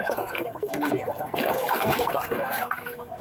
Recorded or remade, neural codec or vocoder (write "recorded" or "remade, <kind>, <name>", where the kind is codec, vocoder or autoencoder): remade, codec, SNAC